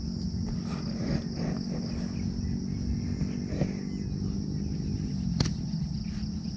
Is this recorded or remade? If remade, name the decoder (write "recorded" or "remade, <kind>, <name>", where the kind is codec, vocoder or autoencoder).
recorded